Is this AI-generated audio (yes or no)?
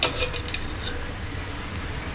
no